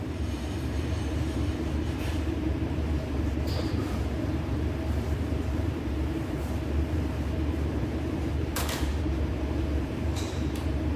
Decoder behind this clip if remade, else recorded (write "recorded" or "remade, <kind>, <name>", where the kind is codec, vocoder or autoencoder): remade, vocoder, BigVGAN v2